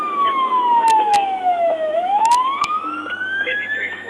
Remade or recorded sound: remade